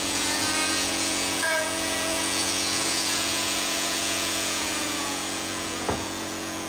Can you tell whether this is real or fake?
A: fake